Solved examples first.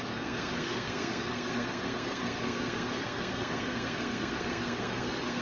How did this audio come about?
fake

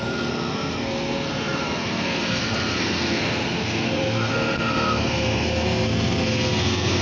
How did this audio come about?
fake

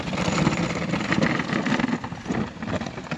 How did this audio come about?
real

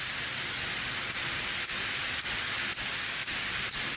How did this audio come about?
real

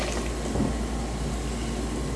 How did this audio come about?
real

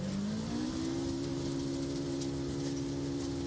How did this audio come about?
real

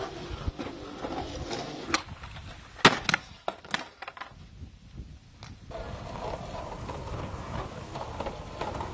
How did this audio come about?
real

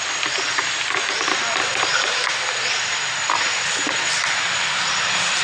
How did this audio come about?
real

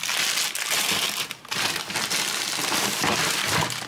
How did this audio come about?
real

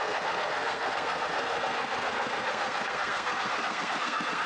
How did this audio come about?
fake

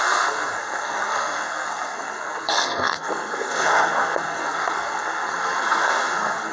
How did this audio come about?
fake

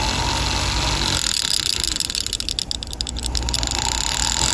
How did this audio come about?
real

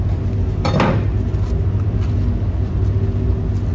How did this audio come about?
real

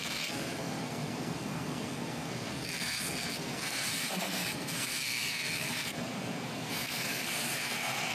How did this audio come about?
fake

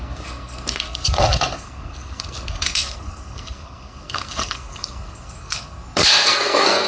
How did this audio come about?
fake